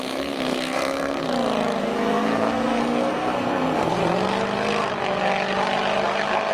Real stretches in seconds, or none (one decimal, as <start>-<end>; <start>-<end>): 1.3-1.8; 4.0-6.5